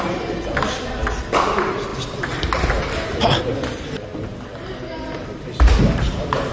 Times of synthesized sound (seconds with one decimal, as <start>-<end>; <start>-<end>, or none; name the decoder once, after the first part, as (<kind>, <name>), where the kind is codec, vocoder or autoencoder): none